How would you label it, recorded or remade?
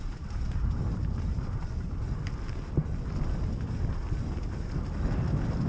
recorded